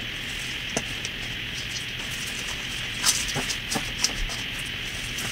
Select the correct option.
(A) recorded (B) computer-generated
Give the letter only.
A